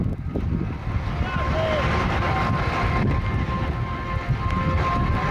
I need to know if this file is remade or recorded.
recorded